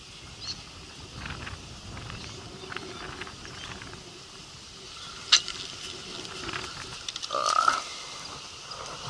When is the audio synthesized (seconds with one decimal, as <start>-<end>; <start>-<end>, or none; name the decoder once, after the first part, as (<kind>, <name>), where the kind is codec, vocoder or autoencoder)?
7.9-9.1 (vocoder, BigVGAN v2)